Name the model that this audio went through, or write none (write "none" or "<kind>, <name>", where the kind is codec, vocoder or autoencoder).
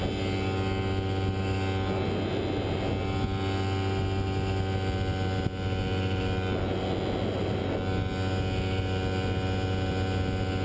none